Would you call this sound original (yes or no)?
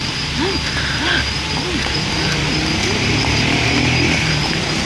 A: yes